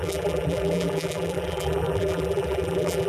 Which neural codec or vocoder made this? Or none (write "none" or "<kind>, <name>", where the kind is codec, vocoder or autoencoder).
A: vocoder, BigVGAN v2